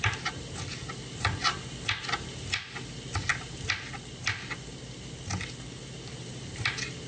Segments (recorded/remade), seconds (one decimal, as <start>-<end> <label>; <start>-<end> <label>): 0.0-7.1 recorded